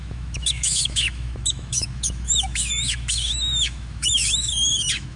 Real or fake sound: fake